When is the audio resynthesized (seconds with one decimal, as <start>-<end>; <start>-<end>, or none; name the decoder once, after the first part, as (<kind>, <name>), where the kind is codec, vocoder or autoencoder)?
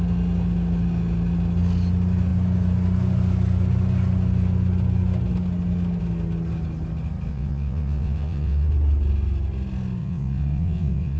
7.3-8.7 (vocoder, WaveNeXt); 10.0-11.2